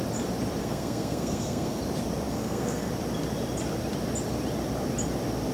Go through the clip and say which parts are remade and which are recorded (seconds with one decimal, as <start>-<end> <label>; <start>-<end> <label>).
0.0-0.6 recorded; 0.6-1.8 remade; 1.8-2.3 recorded; 2.3-2.9 remade; 2.9-5.5 recorded